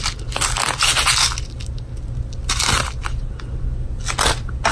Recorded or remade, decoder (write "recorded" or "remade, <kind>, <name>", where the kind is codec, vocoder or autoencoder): recorded